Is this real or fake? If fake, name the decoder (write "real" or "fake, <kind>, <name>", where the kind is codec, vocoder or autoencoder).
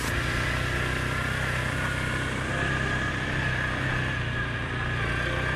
real